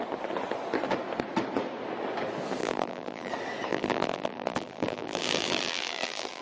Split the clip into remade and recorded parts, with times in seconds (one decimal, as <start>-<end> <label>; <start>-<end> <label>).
0.0-2.6 recorded; 2.6-3.3 remade; 3.3-3.7 recorded; 3.7-6.4 remade